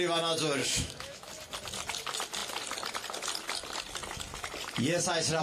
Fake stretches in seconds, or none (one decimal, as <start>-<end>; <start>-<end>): 0.6-1.3